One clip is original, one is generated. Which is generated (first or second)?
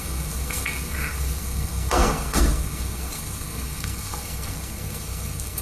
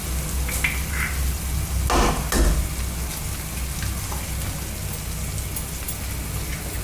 first